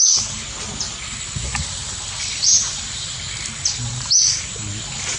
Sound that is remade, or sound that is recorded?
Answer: recorded